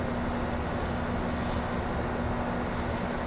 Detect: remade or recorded recorded